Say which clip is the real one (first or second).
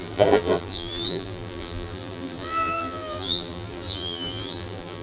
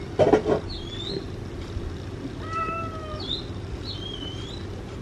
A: second